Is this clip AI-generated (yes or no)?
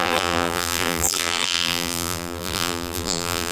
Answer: yes